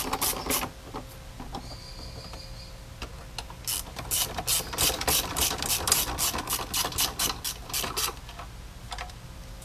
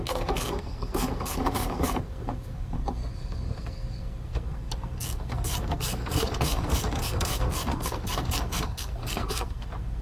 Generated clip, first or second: second